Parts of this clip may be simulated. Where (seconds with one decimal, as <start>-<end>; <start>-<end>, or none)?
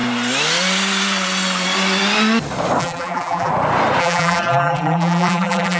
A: 2.8-3.5; 4.0-5.8